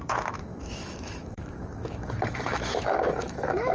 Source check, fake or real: fake